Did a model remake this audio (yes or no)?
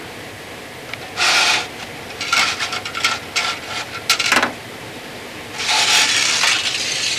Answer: no